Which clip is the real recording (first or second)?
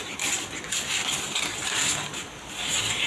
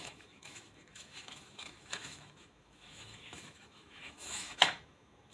first